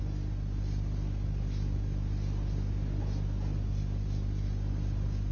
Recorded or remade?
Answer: recorded